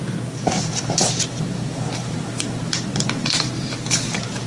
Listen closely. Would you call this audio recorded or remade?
remade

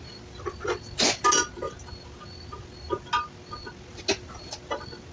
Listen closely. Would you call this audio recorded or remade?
recorded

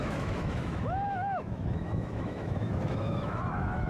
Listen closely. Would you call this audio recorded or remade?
remade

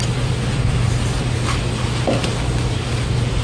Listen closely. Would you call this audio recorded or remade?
recorded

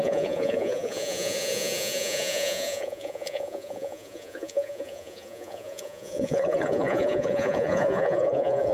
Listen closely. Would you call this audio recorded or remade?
remade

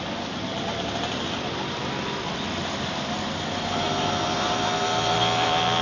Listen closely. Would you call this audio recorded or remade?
recorded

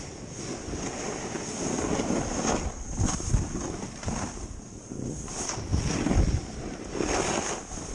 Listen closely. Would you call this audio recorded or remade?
recorded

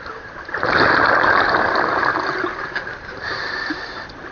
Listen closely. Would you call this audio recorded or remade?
recorded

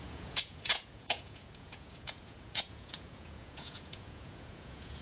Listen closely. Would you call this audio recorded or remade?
remade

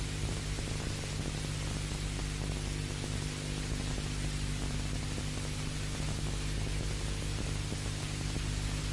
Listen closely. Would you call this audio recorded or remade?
recorded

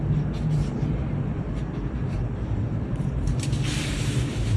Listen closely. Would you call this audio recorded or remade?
remade